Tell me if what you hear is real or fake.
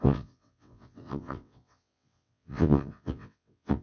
fake